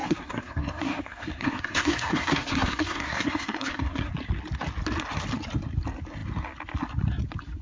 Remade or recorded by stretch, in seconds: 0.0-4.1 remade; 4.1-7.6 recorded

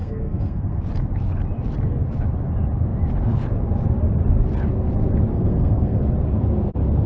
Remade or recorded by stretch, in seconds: 0.0-0.8 remade; 0.8-5.3 recorded; 5.3-6.0 remade; 6.0-7.1 recorded

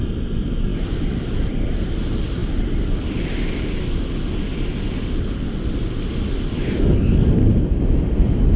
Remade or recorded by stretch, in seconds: 0.0-8.6 recorded